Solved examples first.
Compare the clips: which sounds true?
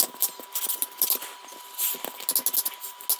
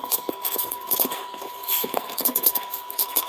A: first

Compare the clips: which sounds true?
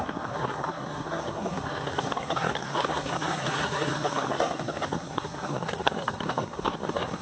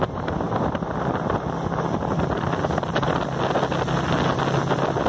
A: second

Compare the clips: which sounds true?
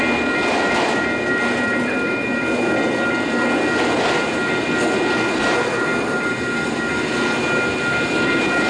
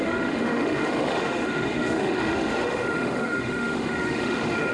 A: first